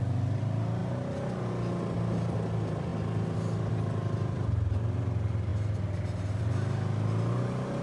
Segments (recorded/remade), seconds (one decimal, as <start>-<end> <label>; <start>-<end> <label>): 0.0-7.8 recorded